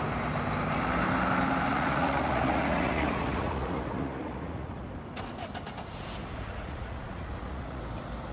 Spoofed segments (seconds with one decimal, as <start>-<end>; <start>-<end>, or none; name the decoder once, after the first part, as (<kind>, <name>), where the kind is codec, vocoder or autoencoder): 1.7-4.9 (vocoder, Vocos); 6.2-7.8

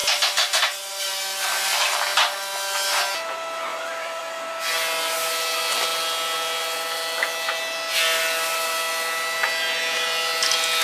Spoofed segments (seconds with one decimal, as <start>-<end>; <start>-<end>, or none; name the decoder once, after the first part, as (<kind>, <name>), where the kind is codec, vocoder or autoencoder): 3.7-4.2 (vocoder, BigVGAN v2)

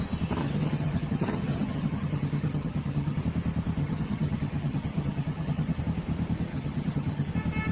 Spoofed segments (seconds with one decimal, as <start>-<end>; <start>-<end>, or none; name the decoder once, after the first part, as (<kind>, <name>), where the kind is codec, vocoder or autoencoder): 0.4-3.2 (vocoder, HiFi-GAN); 3.8-5.8; 6.5-7.3

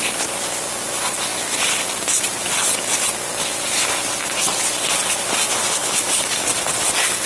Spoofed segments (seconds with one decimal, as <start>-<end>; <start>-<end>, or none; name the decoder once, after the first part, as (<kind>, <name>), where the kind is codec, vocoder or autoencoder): 5.8-6.5 (codec, DAC)